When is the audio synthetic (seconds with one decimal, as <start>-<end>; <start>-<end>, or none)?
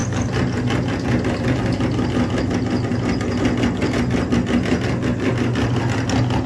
none